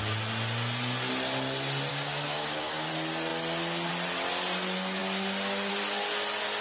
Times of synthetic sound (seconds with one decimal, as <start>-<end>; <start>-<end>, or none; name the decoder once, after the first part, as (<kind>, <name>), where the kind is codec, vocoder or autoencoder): 1.9-2.9 (codec, DAC)